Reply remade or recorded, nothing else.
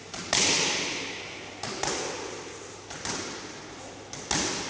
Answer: recorded